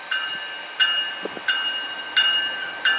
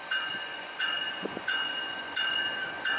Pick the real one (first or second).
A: first